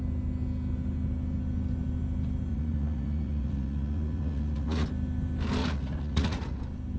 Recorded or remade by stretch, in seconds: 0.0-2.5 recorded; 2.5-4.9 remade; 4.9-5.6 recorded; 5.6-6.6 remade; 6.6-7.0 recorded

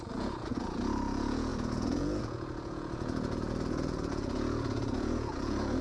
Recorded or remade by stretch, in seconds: 0.0-5.8 remade

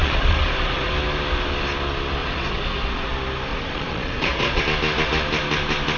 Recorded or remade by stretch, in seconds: 0.0-0.9 remade; 0.9-2.2 recorded; 2.2-3.1 remade; 3.1-3.5 recorded; 3.5-4.6 remade; 4.6-6.0 recorded

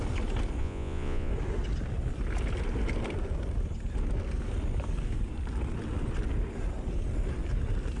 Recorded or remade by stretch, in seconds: 0.0-0.6 recorded; 0.6-1.3 remade; 1.3-8.0 recorded